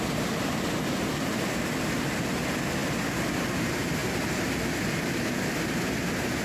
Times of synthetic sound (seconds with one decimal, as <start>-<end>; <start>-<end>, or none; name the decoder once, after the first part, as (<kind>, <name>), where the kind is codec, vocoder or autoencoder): none